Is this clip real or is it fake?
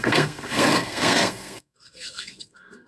fake